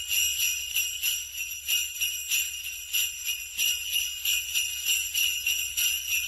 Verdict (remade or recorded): recorded